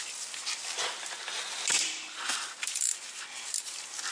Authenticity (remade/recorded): recorded